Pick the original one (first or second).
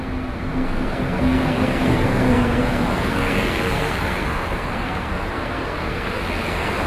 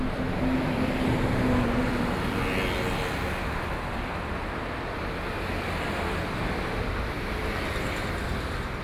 second